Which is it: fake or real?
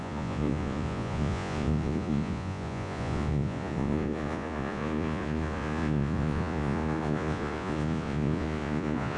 fake